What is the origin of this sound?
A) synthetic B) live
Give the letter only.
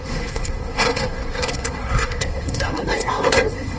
A